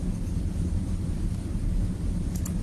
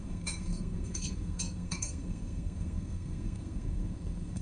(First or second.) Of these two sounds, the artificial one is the second